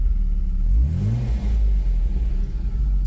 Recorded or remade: recorded